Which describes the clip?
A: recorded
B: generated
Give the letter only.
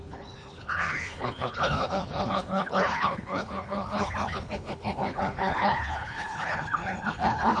B